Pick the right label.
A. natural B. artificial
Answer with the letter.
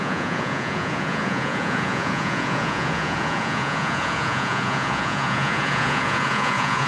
B